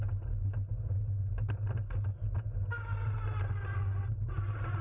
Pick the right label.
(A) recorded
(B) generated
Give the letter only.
A